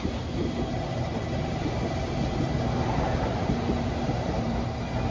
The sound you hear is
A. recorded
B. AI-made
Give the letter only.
A